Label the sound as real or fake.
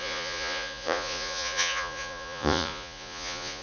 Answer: fake